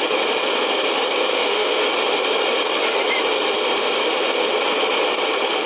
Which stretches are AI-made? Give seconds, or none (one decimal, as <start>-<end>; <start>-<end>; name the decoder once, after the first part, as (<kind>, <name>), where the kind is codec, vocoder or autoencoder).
1.3-1.8 (autoencoder, DAC-VAE)